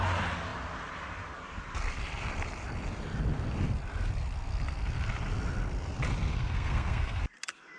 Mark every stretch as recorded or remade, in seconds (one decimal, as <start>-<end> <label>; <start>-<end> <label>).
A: 0.0-6.3 recorded; 6.3-7.2 remade; 7.2-7.8 recorded